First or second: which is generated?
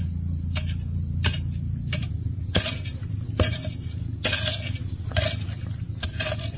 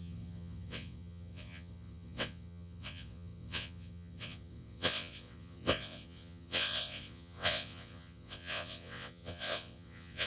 second